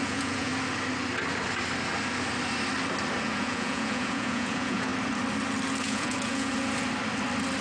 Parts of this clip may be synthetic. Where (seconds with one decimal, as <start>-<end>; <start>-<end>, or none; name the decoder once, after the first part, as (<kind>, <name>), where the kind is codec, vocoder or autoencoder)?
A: 0.0-0.5 (vocoder, Vocos); 3.2-4.9; 5.8-6.5